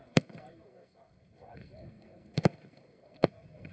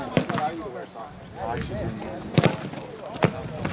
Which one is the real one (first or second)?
second